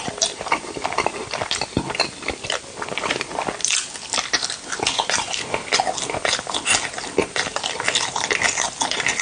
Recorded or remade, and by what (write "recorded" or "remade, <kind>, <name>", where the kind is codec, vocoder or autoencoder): recorded